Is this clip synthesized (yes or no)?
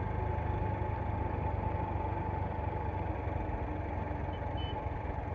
no